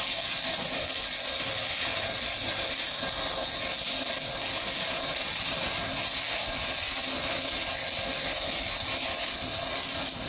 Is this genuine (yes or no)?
yes